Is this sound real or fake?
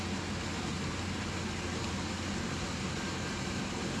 real